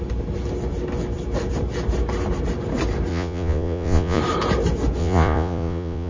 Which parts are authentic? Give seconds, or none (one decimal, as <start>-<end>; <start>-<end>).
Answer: 0.0-3.1; 4.2-5.0